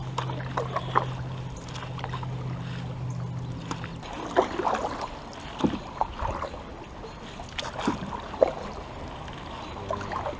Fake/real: real